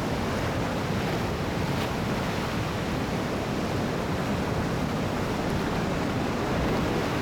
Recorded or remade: recorded